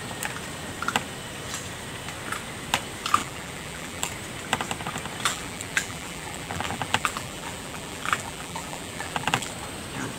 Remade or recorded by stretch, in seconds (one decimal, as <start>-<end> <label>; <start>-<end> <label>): 0.0-3.2 recorded; 3.2-4.1 remade; 4.1-5.3 recorded; 5.3-9.5 remade; 9.5-10.2 recorded